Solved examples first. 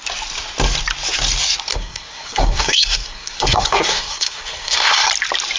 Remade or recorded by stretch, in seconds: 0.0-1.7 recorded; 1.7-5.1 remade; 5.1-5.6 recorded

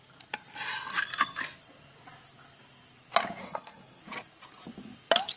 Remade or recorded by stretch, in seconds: 0.0-3.4 recorded; 3.4-4.0 remade; 4.0-5.4 recorded

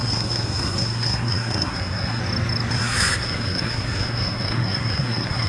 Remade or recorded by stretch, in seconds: 0.0-2.2 remade; 2.2-2.7 recorded; 2.7-5.5 remade

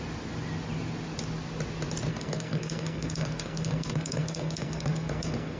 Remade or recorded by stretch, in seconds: 0.0-2.1 recorded; 2.1-5.6 remade